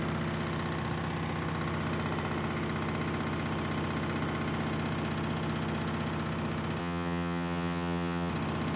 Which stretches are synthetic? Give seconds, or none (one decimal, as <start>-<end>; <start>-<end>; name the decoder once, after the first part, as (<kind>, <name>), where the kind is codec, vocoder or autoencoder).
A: 6.8-8.3 (vocoder, HiFi-GAN)